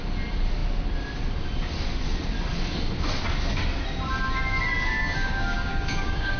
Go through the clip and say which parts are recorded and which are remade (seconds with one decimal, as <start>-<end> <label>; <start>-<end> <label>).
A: 0.0-5.0 recorded; 5.0-6.4 remade